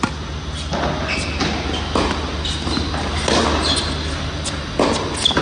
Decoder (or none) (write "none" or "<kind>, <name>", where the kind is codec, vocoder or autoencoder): none